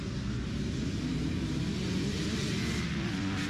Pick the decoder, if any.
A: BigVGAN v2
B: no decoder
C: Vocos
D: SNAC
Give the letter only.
B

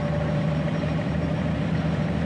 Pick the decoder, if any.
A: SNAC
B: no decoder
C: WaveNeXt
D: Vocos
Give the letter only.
B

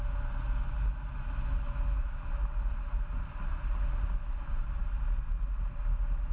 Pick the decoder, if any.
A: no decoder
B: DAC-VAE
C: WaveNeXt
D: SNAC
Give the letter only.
A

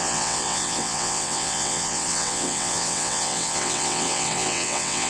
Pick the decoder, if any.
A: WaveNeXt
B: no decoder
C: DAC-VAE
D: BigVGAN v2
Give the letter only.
A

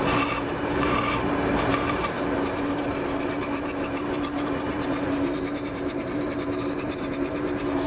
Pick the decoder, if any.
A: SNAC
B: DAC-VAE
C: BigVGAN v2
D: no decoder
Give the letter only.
C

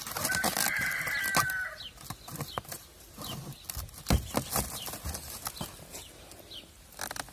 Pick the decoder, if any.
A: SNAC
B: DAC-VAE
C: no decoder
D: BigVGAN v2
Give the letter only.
C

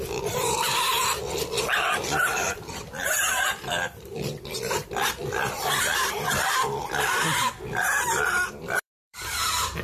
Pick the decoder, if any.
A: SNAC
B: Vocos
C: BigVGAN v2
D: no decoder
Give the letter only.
C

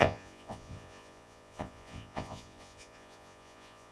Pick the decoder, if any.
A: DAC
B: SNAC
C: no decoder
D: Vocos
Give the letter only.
D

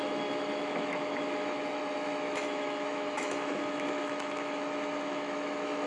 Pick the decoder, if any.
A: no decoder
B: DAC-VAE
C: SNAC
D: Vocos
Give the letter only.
B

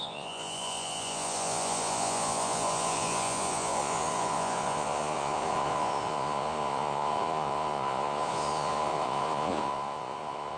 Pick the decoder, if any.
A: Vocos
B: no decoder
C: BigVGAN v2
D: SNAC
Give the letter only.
A